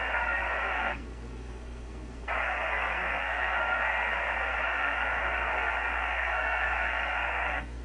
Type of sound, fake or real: fake